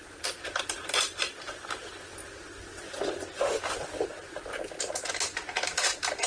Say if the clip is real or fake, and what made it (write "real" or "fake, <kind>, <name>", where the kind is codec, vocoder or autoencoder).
real